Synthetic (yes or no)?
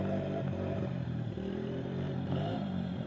yes